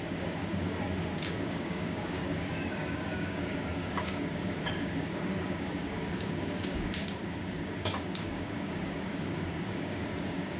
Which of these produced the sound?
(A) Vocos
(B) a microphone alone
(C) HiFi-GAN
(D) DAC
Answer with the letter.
D